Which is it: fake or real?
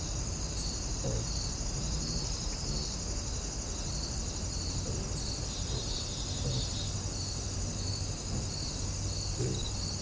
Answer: real